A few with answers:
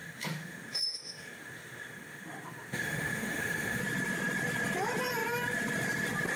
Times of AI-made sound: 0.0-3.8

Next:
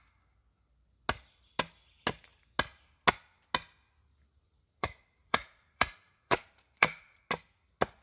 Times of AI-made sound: 4.8-7.2

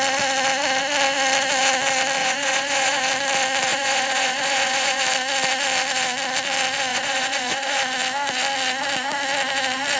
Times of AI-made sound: 2.2-3.0; 3.7-5.0; 6.9-7.8